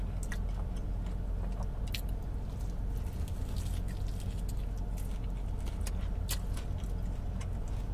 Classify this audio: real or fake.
real